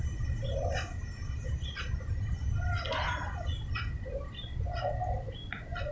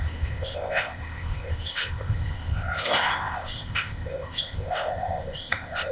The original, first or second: first